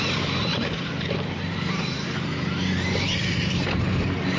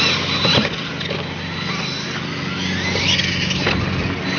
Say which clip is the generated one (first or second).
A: first